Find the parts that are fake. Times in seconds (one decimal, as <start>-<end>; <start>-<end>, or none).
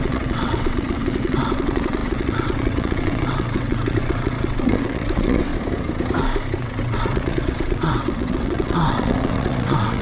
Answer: 0.0-5.5; 6.6-10.0